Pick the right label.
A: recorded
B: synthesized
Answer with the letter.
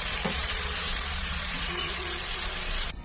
B